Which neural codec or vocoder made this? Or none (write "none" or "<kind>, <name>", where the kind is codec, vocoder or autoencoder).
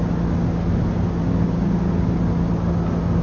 none